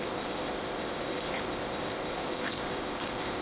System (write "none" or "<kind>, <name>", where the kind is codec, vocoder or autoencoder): codec, ZipCodec